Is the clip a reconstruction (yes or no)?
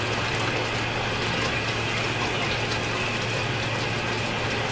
no